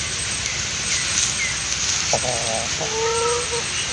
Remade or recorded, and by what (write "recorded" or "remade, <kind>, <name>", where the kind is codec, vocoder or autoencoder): recorded